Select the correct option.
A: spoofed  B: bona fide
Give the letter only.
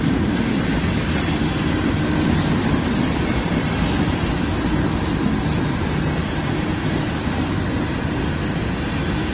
B